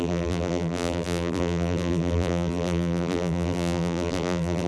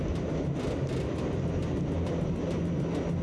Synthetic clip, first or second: first